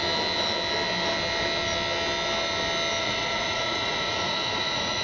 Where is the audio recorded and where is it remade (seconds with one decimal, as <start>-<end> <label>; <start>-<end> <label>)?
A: 0.0-3.0 recorded; 3.0-5.0 remade